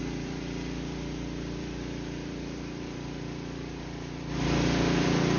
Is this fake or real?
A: fake